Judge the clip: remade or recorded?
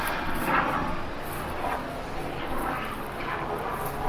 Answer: recorded